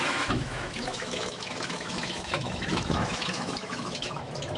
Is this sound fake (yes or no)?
yes